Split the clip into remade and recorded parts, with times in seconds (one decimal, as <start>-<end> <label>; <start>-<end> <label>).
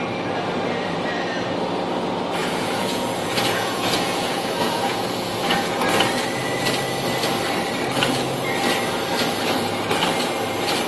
0.0-2.4 recorded; 2.4-5.8 remade; 5.8-10.9 recorded